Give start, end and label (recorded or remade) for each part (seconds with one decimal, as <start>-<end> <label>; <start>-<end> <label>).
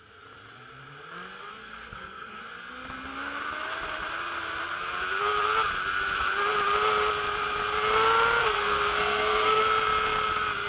0.0-1.6 recorded; 1.6-2.4 remade; 2.4-8.4 recorded; 8.4-9.6 remade; 9.6-10.7 recorded